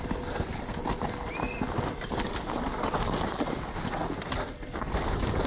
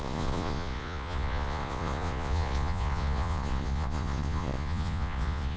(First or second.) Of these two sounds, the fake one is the second